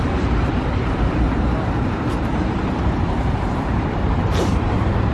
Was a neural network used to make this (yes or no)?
yes